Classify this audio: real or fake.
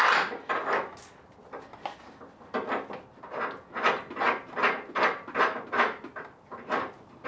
real